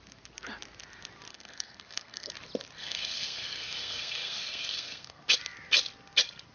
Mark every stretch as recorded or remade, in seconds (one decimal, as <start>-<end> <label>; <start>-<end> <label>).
0.0-1.3 recorded; 1.3-2.3 remade; 2.3-2.8 recorded; 2.8-5.2 remade; 5.2-6.5 recorded